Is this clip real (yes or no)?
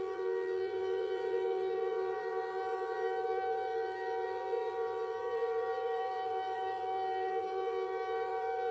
no